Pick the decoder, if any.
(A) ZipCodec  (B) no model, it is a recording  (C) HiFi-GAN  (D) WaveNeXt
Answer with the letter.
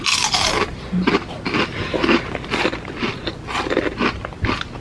B